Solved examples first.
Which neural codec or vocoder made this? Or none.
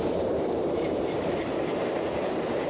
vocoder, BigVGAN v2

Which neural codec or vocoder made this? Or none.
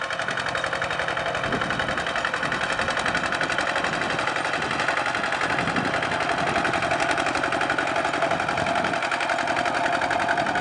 none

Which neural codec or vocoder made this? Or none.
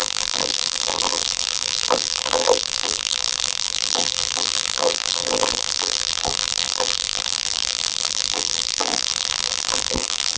vocoder, BigVGAN v2